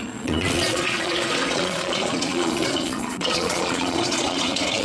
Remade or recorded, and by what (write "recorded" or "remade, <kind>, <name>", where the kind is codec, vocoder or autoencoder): remade, vocoder, Vocos